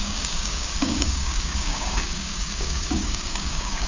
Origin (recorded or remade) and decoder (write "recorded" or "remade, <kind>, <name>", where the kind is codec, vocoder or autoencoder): remade, codec, DAC